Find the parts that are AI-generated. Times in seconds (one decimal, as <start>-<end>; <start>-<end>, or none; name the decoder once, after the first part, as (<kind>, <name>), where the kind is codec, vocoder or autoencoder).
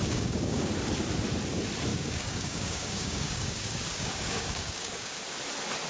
0.0-0.7 (codec, DAC); 1.9-5.2